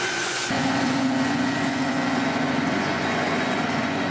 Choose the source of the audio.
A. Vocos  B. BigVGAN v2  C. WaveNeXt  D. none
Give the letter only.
A